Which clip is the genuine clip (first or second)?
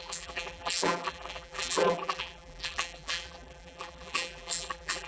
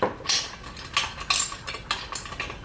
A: second